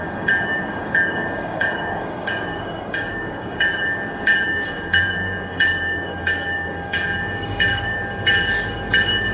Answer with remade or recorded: remade